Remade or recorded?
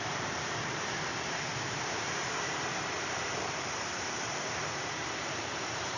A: remade